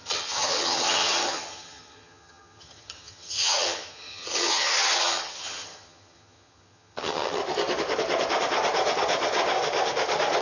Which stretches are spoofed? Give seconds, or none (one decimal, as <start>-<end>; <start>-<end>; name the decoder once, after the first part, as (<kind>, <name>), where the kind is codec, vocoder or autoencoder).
0.0-7.4 (vocoder, HiFi-GAN)